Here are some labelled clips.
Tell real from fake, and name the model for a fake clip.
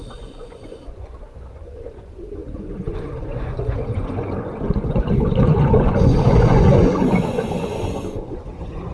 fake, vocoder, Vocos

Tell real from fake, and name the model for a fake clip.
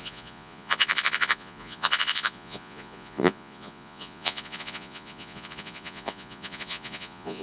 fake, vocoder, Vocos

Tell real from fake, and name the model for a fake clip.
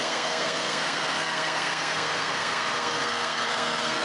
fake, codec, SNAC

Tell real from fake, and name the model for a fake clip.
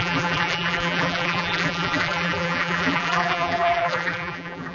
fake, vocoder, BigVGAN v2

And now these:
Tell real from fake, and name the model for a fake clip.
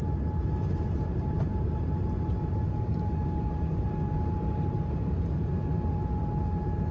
fake, vocoder, BigVGAN v2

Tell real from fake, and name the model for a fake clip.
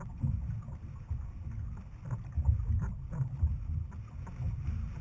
real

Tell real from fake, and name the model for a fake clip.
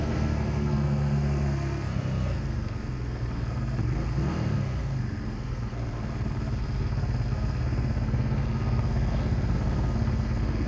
fake, codec, SNAC